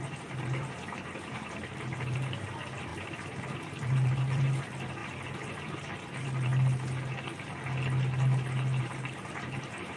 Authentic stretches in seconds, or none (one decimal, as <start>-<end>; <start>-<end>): 5.0-5.5; 6.5-8.8